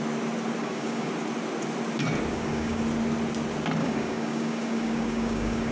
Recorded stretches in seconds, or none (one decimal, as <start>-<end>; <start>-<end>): 0.0-0.6; 1.1-2.3; 2.8-3.8